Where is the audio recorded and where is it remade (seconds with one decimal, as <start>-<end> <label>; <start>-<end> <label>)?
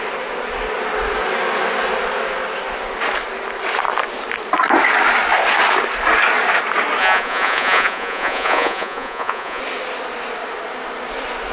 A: 0.0-7.0 recorded; 7.0-9.6 remade; 9.6-11.5 recorded